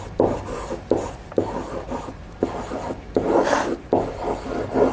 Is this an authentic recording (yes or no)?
yes